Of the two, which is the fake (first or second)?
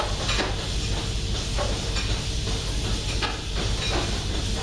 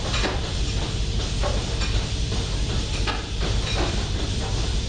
second